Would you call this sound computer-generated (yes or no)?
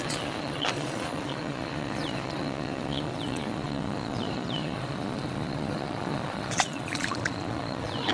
yes